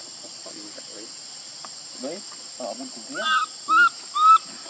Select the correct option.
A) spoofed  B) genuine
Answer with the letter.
B